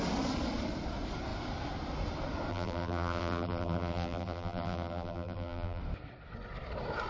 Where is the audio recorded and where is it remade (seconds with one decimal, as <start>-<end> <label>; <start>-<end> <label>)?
0.0-2.5 recorded; 2.5-5.8 remade; 5.8-7.1 recorded